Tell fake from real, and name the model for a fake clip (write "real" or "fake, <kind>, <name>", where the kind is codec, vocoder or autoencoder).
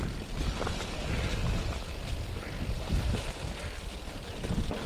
real